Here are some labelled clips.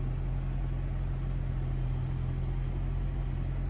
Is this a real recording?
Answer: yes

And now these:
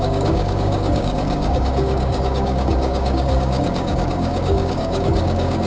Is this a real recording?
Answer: no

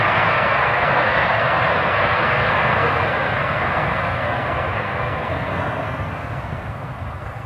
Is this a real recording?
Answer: no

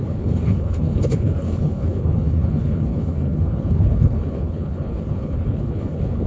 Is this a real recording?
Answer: no